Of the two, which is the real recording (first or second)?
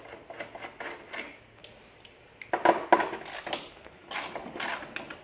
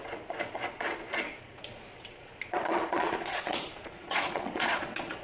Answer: first